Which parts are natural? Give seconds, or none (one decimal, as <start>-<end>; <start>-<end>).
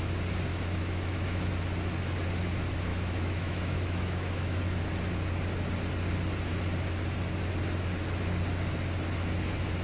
0.0-0.5; 1.5-2.9; 4.6-9.8